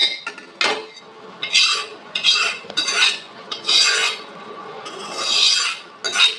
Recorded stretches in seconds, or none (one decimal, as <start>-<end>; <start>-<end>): 0.0-1.7; 5.5-6.4